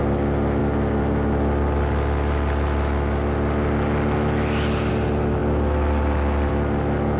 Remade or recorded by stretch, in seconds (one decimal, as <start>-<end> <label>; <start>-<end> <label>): 0.0-7.2 recorded